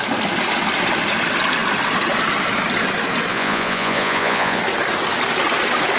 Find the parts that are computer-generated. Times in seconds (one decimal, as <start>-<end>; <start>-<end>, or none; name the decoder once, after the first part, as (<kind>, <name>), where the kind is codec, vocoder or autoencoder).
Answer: 3.3-4.6 (vocoder, Vocos)